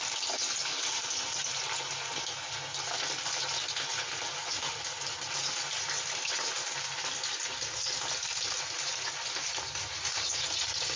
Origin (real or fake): real